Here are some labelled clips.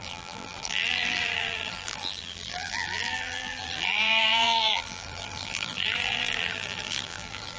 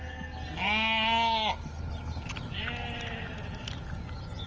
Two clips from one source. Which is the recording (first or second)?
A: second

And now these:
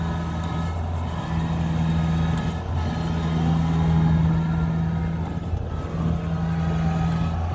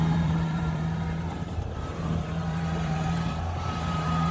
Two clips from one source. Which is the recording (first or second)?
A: first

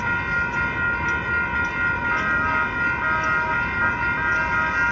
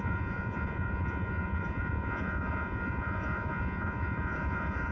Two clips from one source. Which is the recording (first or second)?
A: first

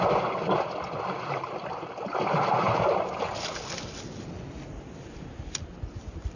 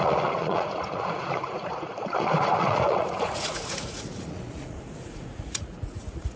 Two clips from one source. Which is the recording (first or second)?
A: first